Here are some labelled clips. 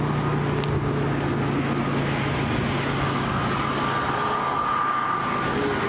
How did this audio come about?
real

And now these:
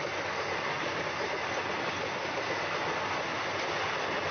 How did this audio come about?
real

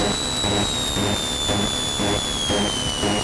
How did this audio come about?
real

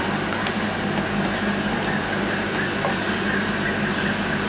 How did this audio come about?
real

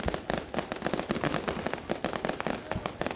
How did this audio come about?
real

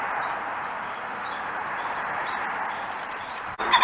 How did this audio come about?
fake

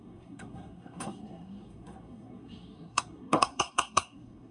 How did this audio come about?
fake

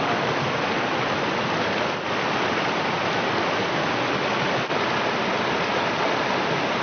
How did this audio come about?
real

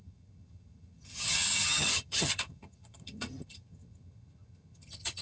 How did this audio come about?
fake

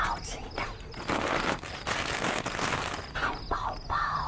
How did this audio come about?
real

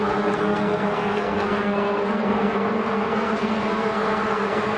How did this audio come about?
fake